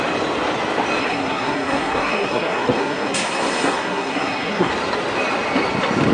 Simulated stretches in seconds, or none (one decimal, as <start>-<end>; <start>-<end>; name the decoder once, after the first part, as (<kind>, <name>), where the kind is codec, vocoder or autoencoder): 1.0-4.7 (codec, SNAC)